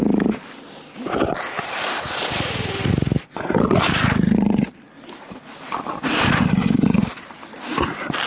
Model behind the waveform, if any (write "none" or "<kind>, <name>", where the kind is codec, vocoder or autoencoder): none